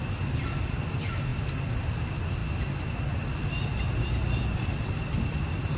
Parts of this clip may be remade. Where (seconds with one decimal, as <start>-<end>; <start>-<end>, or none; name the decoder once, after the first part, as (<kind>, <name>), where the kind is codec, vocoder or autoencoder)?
4.5-5.8 (vocoder, BigVGAN v2)